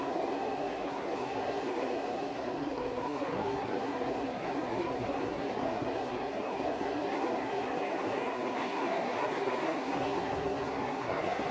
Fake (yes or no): yes